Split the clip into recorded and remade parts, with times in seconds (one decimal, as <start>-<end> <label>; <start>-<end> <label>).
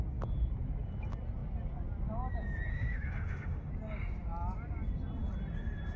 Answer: 0.0-2.7 recorded; 2.7-3.7 remade; 3.7-6.0 recorded